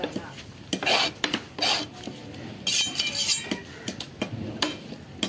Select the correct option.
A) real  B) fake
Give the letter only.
A